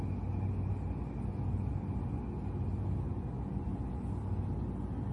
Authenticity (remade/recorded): recorded